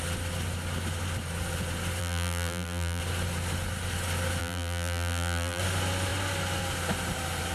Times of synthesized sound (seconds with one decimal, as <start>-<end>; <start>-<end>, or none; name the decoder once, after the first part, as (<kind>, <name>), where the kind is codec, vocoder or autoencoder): 2.0-3.0 (vocoder, BigVGAN v2); 4.4-5.6